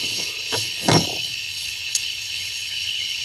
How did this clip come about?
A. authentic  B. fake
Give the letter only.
B